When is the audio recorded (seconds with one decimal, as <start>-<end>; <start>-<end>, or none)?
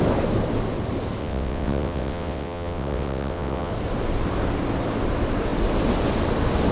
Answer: 0.0-1.2; 3.7-6.7